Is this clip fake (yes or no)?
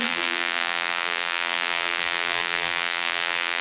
yes